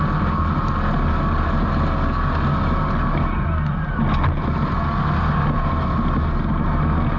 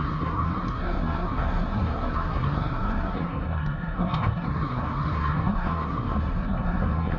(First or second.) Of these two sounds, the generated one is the second